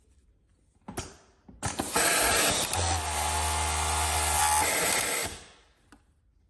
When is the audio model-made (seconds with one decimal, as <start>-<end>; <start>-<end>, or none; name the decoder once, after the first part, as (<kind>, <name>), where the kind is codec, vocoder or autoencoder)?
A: none